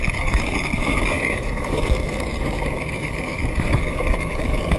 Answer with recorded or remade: remade